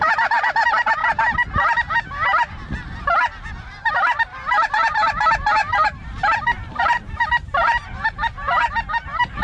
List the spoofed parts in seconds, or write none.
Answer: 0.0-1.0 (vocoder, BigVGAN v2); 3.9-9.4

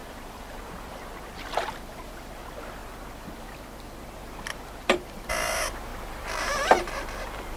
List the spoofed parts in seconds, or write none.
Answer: 0.0-7.6 (vocoder, BigVGAN v2)

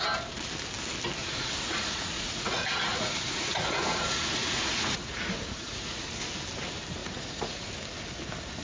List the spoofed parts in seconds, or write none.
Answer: 1.2-6.1 (vocoder, Vocos); 7.0-7.7

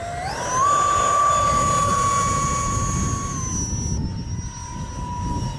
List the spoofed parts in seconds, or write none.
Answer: 1.9-2.7 (vocoder, Vocos)

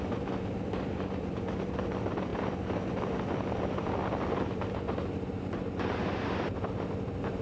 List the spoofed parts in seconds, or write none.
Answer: none

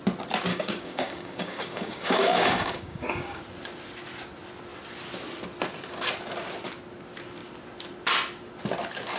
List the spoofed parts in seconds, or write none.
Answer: 0.5-3.4 (codec, DAC)

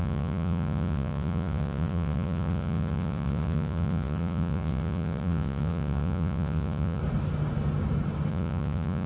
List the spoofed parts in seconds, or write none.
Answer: 0.0-7.0 (vocoder, Vocos); 8.3-9.1

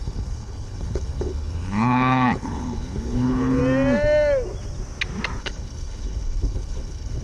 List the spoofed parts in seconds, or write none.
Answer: 0.0-3.6 (codec, HILCodec); 5.4-7.2